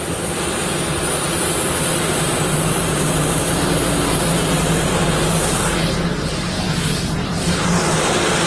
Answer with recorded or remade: recorded